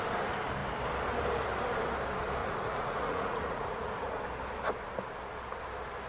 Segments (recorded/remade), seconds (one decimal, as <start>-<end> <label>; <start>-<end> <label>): 0.0-2.4 recorded; 2.4-4.2 remade; 4.2-6.1 recorded